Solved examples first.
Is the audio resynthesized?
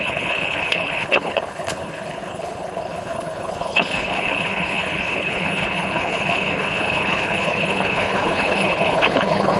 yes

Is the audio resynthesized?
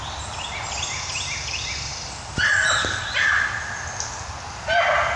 no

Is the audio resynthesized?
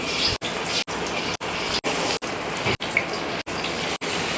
no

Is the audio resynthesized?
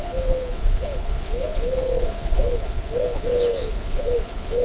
yes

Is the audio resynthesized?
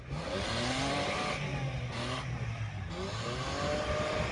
no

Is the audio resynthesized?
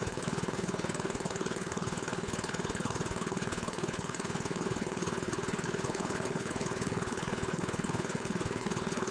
yes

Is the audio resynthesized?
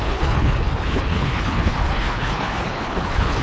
yes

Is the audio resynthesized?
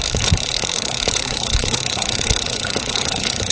yes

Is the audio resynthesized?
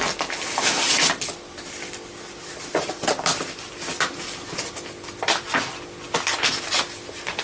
no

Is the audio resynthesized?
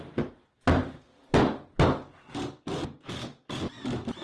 no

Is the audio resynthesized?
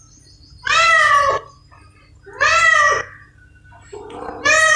no